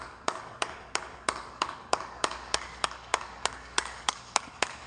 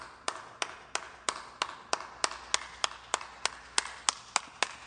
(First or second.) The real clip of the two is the second